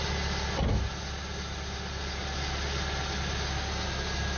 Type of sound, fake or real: real